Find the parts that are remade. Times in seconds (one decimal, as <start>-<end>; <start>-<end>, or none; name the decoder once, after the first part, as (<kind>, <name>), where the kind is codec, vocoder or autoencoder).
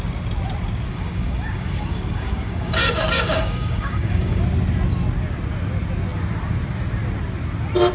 0.9-4.4 (codec, DAC)